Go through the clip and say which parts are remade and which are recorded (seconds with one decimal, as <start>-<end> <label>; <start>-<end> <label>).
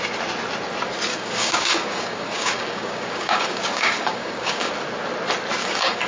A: 0.0-1.1 recorded; 1.1-4.7 remade; 4.7-5.6 recorded; 5.6-6.1 remade